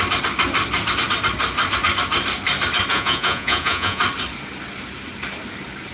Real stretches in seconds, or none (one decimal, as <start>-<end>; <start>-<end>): 0.0-2.9; 4.0-5.9